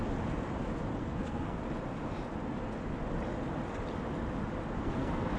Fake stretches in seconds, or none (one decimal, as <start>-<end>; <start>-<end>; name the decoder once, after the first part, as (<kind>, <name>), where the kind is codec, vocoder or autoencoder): 1.0-1.6 (codec, SNAC); 4.8-5.4